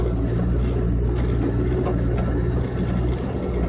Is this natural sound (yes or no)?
yes